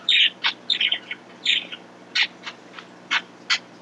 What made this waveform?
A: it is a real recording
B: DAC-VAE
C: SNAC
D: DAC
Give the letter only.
A